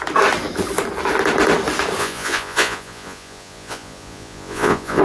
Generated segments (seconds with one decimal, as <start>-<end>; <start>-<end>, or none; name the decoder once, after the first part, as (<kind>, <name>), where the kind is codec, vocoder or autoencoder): 2.0-5.0 (vocoder, Vocos)